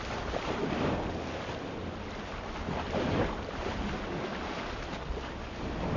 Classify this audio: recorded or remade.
recorded